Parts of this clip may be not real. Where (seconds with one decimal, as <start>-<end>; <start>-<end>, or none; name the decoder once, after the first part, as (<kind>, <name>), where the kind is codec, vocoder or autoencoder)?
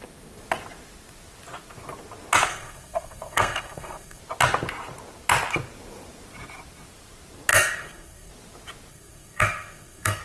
2.5-4.2 (codec, SNAC); 7.5-8.3; 8.9-10.2